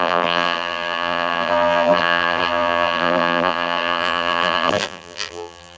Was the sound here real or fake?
fake